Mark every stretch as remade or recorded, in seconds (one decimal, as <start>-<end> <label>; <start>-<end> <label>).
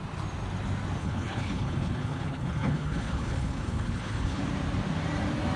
0.0-1.0 recorded; 1.0-4.4 remade; 4.4-5.6 recorded